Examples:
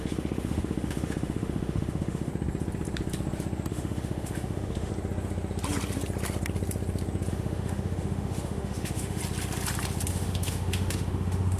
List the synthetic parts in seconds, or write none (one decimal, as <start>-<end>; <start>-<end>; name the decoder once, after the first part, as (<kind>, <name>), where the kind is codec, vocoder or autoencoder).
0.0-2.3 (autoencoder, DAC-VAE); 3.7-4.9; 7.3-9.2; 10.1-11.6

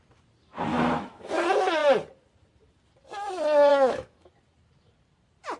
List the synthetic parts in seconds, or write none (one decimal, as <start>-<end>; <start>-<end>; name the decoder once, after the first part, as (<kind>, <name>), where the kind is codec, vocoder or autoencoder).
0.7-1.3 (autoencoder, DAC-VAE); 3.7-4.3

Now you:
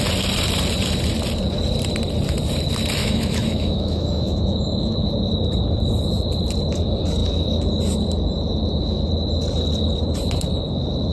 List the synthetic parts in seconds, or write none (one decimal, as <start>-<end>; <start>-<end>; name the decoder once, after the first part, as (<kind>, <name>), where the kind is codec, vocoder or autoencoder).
3.0-5.1 (autoencoder, DAC-VAE)

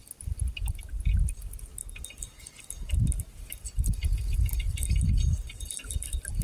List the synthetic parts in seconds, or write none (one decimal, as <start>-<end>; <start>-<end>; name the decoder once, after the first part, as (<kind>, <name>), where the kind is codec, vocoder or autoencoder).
none

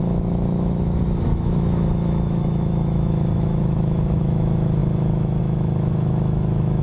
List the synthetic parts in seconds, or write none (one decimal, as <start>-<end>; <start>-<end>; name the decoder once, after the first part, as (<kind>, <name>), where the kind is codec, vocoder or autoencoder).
0.0-6.8 (autoencoder, DAC-VAE)

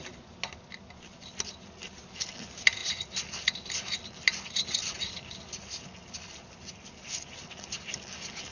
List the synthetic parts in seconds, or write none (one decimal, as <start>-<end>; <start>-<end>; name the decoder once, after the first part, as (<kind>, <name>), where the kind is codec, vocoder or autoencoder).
none

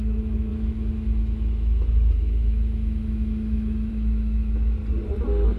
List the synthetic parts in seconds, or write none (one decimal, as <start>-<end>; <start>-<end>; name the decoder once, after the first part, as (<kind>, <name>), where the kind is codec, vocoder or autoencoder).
0.0-4.8 (autoencoder, DAC-VAE)